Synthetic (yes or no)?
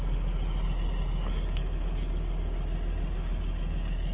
no